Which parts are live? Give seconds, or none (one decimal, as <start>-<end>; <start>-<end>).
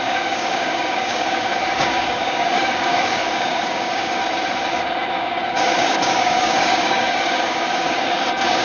4.2-5.1